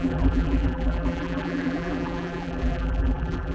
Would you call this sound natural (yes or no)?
no